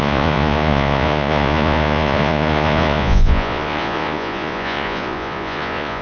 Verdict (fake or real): fake